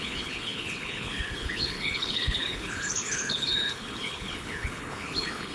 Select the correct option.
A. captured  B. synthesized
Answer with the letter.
B